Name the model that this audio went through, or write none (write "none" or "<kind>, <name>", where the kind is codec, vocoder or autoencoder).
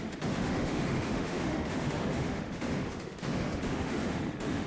autoencoder, DAC-VAE